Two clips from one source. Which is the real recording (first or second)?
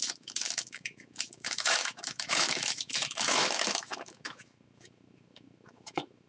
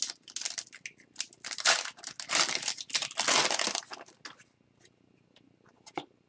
second